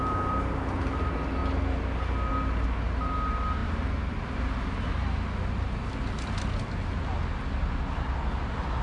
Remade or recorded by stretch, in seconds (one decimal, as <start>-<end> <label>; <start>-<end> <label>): 0.0-8.8 recorded